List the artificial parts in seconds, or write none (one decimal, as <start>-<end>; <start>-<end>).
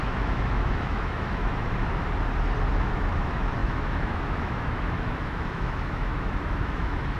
0.0-1.8; 2.7-7.2